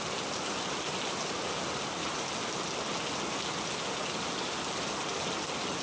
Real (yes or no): yes